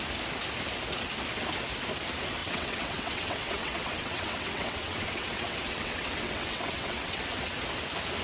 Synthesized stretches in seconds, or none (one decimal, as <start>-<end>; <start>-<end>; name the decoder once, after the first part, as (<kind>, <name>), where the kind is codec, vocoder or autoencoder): 2.4-7.2 (vocoder, WaveNeXt)